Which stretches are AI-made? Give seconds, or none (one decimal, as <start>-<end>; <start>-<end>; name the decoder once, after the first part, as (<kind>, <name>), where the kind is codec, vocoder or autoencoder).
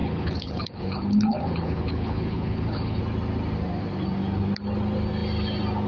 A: 0.0-3.0 (codec, HILCodec)